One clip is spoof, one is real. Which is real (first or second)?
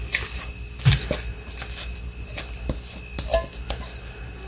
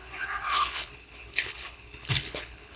first